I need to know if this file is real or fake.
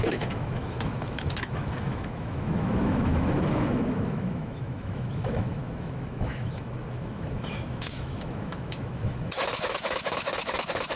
fake